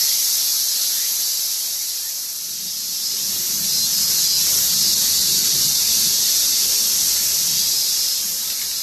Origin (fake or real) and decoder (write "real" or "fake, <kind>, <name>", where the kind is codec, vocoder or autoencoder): real